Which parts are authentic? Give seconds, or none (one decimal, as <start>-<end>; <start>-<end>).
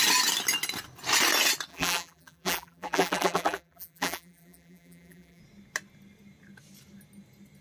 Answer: 0.0-1.7; 5.4-7.6